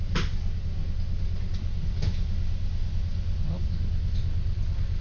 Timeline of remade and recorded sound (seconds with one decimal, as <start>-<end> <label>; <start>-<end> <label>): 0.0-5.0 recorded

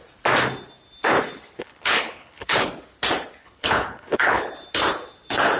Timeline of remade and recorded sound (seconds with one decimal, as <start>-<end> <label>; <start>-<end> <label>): 0.0-1.6 recorded; 1.6-2.7 remade; 2.7-3.4 recorded; 3.4-4.5 remade; 4.5-5.6 recorded

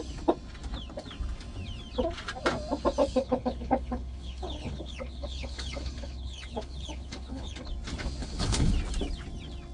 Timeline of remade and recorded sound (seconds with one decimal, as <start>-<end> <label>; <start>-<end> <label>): 0.0-3.0 recorded; 3.0-7.7 remade; 7.7-8.2 recorded; 8.2-8.7 remade; 8.7-9.7 recorded